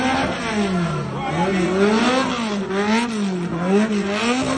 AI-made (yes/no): no